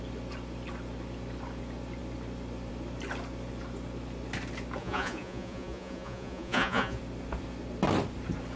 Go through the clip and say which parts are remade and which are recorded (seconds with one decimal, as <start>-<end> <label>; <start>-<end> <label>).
0.0-4.8 recorded; 4.8-7.0 remade; 7.0-8.6 recorded